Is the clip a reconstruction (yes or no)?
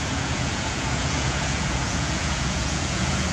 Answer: yes